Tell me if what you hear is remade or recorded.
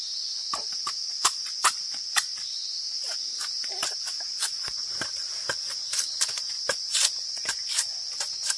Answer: recorded